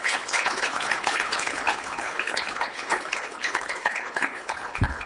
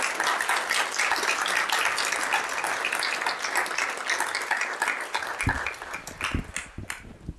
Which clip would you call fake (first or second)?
first